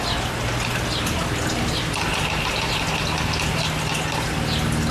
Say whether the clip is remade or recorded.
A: recorded